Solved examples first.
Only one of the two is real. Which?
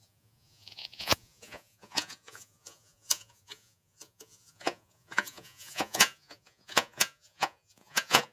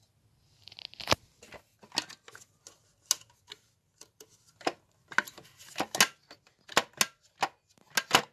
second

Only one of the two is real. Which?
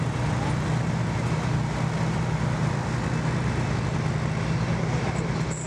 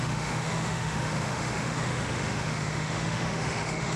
first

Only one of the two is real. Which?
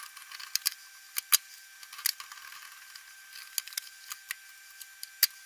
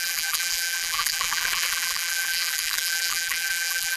first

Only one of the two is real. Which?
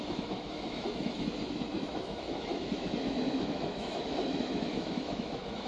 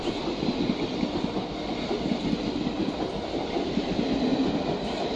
second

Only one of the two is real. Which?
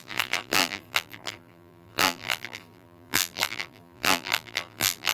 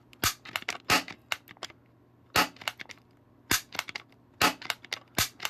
second